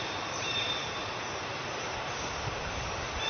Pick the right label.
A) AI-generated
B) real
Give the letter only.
A